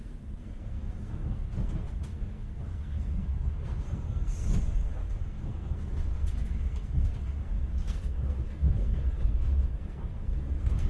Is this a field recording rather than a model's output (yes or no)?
no